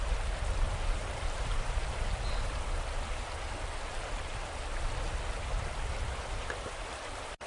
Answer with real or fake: real